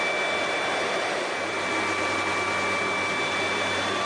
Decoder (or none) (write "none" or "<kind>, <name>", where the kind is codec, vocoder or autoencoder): none